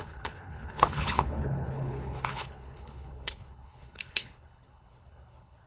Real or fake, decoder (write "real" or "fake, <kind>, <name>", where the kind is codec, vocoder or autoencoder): fake, codec, HILCodec